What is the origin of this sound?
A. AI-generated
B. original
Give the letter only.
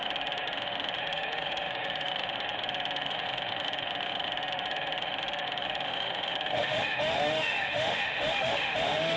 A